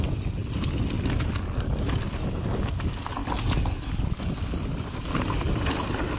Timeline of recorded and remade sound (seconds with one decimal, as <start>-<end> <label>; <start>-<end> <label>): 0.0-6.2 recorded